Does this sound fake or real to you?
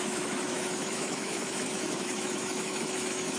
fake